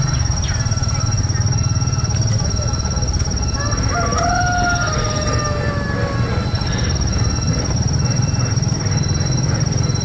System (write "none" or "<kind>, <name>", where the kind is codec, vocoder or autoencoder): none